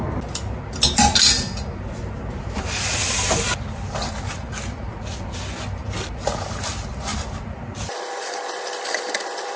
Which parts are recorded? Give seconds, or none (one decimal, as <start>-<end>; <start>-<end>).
0.0-9.6